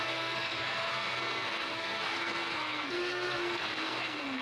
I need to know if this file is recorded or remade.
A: remade